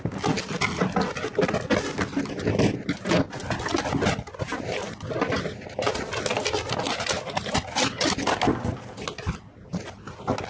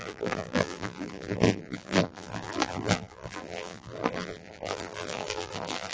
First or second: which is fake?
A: second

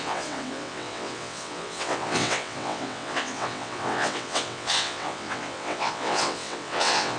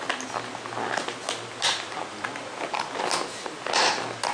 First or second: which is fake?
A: first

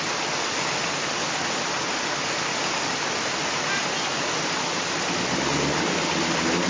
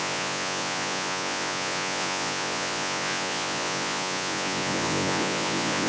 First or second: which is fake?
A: second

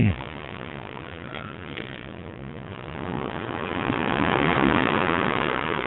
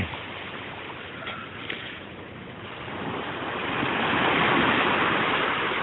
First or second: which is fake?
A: first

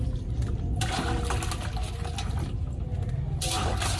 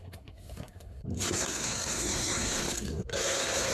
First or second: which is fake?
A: second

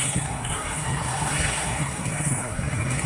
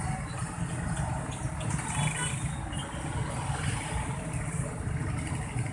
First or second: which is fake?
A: first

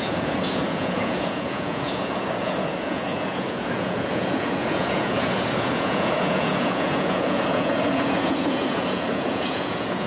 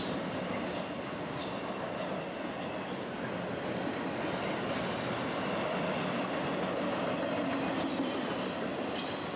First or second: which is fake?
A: first